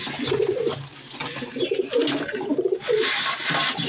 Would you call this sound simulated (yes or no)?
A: no